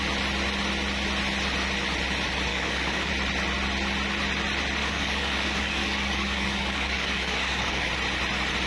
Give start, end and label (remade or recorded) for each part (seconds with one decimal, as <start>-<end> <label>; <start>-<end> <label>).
0.0-2.5 recorded; 2.5-3.1 remade; 3.1-4.8 recorded; 4.8-7.9 remade; 7.9-8.7 recorded